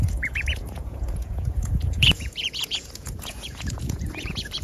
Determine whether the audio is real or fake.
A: fake